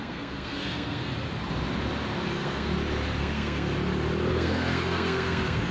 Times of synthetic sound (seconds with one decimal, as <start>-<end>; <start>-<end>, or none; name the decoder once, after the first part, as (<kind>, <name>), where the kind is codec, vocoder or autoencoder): 0.0-1.1 (codec, SNAC); 2.3-2.7; 3.2-3.7; 4.3-5.7